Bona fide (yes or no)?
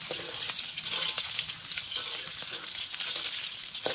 yes